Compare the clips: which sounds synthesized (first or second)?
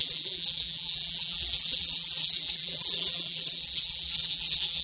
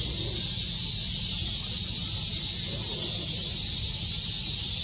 first